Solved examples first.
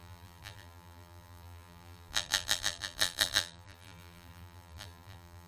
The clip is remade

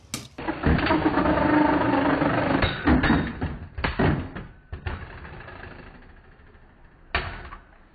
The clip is recorded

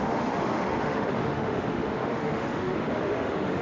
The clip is remade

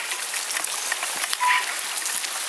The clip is recorded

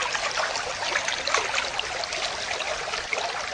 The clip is recorded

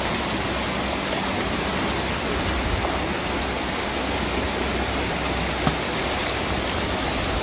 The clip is recorded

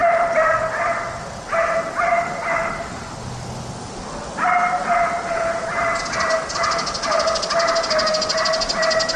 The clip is recorded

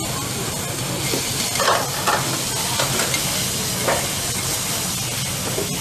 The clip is recorded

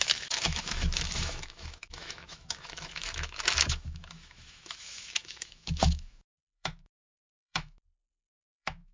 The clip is remade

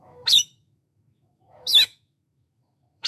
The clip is remade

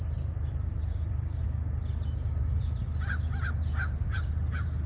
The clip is recorded